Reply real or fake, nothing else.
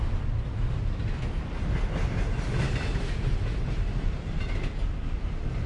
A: real